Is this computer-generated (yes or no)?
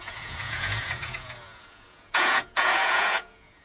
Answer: yes